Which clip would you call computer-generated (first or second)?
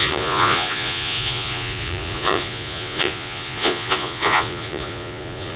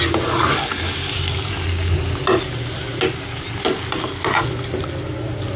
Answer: first